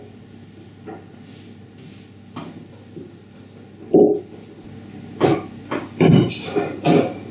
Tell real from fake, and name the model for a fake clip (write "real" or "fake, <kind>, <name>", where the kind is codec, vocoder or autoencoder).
real